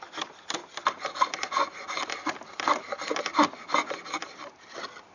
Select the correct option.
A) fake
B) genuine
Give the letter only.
B